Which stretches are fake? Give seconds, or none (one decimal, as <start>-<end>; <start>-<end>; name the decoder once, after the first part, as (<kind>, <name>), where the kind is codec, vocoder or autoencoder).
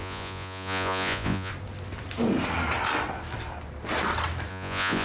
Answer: 0.0-1.5 (vocoder, Vocos); 4.5-5.0